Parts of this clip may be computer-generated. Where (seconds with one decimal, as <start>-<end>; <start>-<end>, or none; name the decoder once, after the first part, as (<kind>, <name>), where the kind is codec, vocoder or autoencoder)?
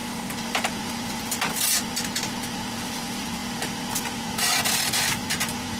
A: none